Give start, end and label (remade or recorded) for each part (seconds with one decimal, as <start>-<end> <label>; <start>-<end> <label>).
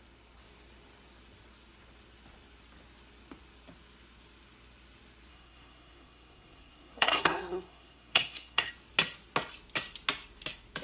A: 0.0-5.3 recorded; 5.3-8.7 remade; 8.7-10.8 recorded